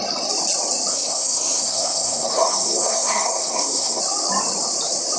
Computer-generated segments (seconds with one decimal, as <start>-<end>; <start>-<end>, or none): 0.9-4.0